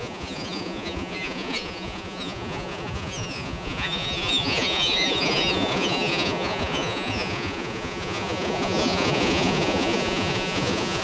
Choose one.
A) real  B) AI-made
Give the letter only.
B